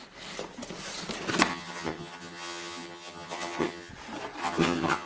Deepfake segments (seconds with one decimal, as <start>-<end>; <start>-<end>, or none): 1.5-3.9; 4.4-5.1

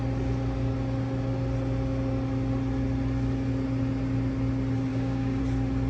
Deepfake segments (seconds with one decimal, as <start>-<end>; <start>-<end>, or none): 4.9-5.4

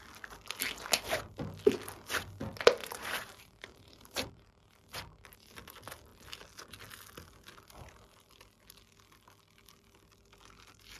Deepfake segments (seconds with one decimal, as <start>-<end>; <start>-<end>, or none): 2.8-4.3

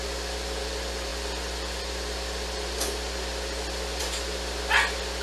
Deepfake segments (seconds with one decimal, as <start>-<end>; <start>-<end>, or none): none